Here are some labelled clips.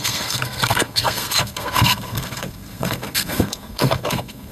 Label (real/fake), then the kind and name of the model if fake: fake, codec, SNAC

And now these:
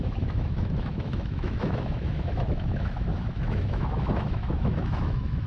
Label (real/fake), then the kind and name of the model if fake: fake, autoencoder, DAC-VAE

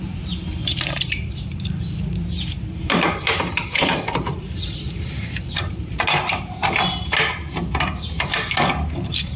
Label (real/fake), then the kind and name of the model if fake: fake, vocoder, BigVGAN v2